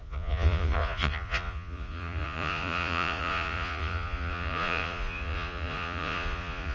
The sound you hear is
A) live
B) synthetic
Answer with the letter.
B